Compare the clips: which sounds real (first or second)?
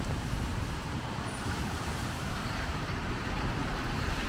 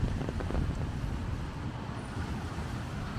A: second